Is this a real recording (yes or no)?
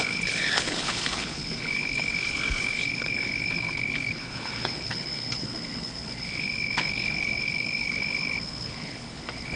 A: no